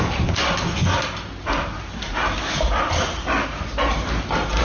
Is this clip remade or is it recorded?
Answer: recorded